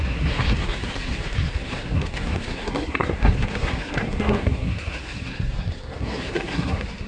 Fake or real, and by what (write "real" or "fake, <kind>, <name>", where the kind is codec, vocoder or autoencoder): fake, codec, SNAC